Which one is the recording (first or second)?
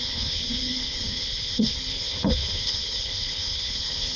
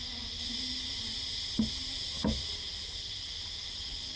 second